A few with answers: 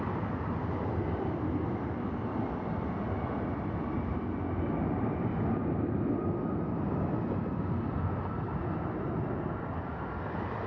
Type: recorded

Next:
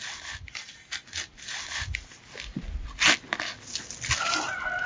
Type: recorded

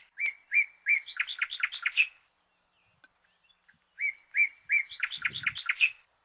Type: recorded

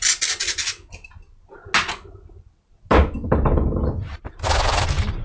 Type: recorded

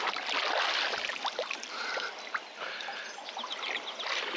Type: recorded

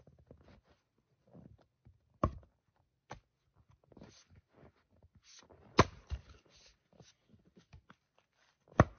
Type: recorded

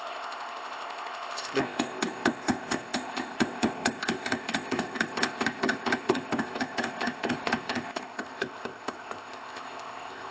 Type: remade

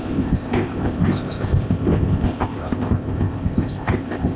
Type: remade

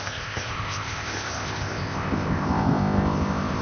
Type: remade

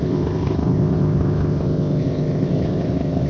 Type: remade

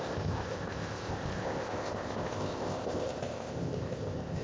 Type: remade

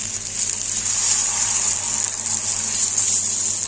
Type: recorded